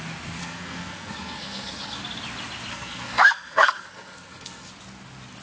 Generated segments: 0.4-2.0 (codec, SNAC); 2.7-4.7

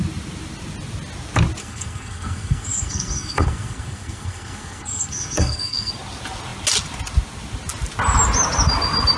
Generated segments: 1.6-5.9 (codec, SNAC)

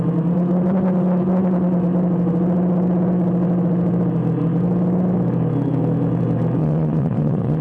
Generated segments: 6.6-7.6 (vocoder, Vocos)

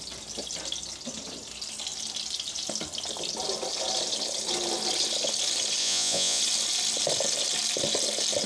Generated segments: 5.8-6.4 (vocoder, Vocos)

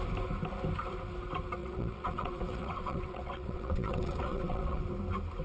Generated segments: 1.6-4.8 (vocoder, WaveNeXt)

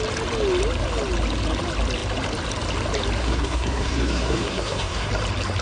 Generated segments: 3.2-5.1 (codec, SNAC)

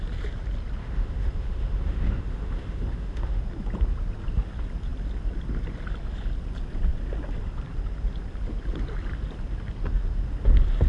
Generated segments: 0.8-3.4 (autoencoder, DAC-VAE)